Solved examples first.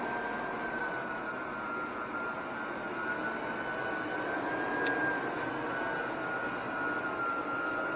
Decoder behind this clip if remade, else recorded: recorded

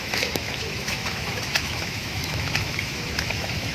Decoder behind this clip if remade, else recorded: remade, autoencoder, DAC-VAE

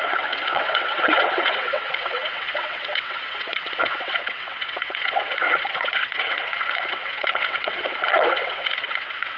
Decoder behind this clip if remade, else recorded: remade, vocoder, WaveNeXt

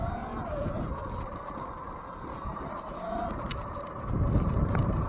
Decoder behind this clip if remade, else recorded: recorded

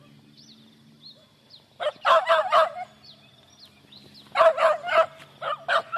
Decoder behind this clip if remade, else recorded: recorded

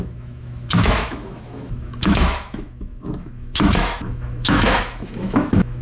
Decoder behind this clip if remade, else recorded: remade, autoencoder, DAC-VAE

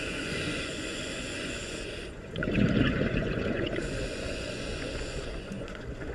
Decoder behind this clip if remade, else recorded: remade, vocoder, Vocos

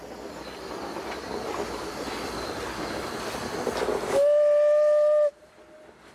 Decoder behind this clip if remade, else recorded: recorded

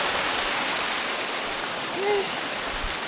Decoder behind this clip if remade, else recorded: recorded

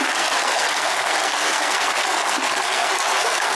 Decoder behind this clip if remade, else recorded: remade, codec, SNAC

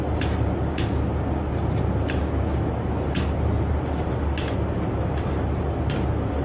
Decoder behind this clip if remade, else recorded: recorded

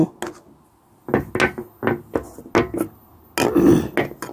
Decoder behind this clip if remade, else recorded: recorded